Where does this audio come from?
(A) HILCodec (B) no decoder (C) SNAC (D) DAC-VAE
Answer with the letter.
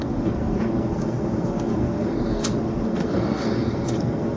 C